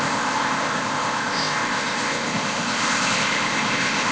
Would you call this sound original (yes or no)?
no